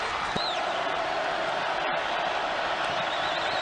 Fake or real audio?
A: real